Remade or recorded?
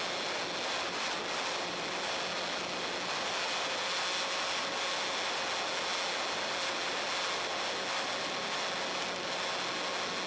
recorded